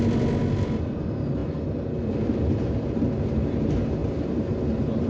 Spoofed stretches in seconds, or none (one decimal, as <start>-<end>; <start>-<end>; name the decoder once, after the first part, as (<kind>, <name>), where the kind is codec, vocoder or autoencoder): none